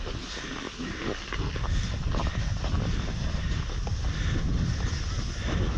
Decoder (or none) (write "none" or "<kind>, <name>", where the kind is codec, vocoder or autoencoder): none